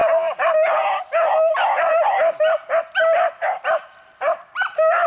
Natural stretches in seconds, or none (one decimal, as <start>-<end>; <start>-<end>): 0.0-5.1